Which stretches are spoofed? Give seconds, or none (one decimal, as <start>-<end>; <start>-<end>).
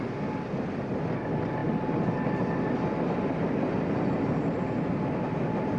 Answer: none